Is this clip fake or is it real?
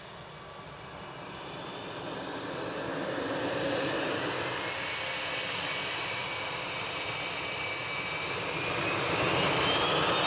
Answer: real